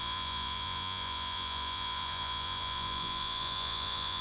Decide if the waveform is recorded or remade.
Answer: remade